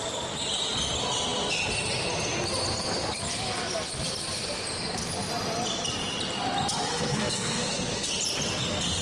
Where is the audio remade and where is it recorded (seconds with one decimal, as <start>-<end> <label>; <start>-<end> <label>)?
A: 0.0-6.9 recorded; 6.9-8.1 remade; 8.1-9.0 recorded